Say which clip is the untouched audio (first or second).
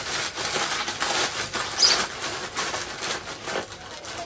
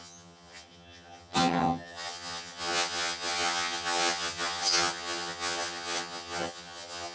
first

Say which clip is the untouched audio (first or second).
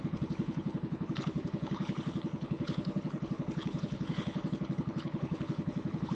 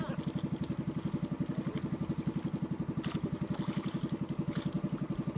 second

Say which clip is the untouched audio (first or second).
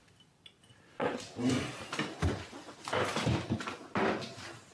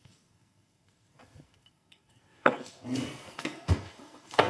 first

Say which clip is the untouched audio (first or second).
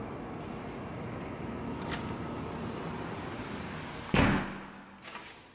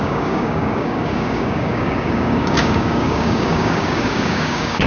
first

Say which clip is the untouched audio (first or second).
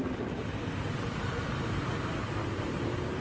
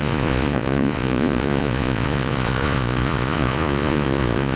first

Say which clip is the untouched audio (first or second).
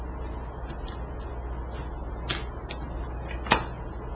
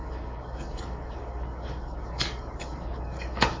first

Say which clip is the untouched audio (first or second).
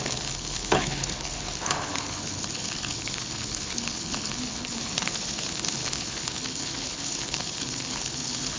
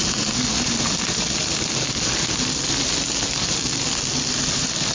second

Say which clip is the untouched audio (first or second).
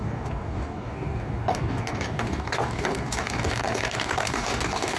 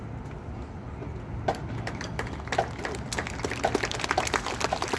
second